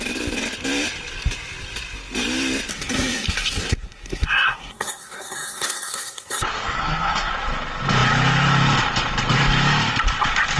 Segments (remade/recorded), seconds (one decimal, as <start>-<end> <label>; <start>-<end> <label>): 0.0-2.7 recorded; 2.7-7.3 remade; 7.3-10.6 recorded